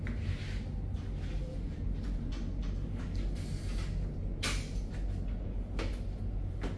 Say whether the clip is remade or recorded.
recorded